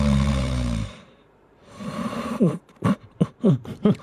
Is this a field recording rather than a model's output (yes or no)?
no